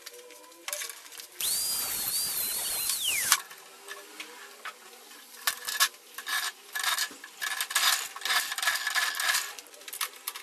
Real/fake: real